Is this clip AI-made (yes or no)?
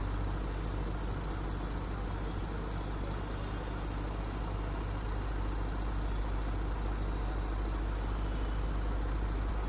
no